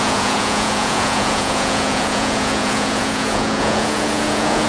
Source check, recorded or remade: remade